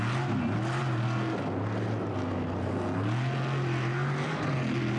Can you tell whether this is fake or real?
real